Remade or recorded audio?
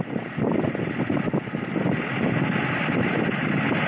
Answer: recorded